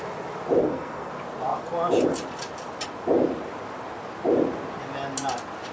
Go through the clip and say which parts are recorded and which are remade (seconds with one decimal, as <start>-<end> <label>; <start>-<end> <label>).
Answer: 0.0-0.6 recorded; 0.6-1.1 remade; 1.1-5.7 recorded